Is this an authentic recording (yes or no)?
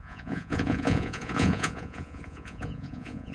no